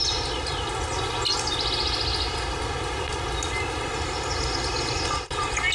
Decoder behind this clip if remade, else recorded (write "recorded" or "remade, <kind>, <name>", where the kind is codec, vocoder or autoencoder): recorded